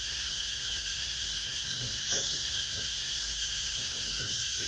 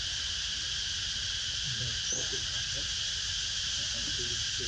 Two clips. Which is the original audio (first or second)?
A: second